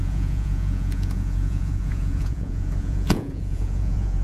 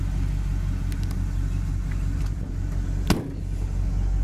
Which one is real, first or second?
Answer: second